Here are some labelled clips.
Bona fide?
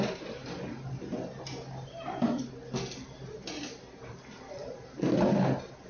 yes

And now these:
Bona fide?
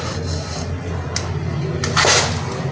yes